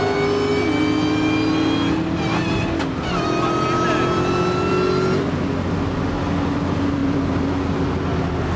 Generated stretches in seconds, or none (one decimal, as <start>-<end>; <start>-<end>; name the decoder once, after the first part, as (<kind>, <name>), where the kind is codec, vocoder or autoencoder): none